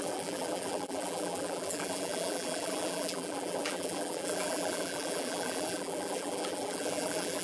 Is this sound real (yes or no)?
no